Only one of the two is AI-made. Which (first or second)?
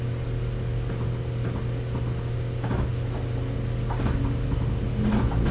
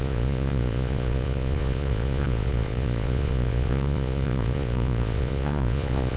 second